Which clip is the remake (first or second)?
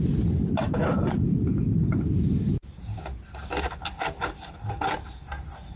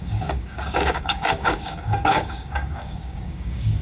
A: second